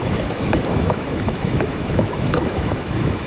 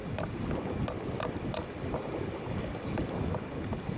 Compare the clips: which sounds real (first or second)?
second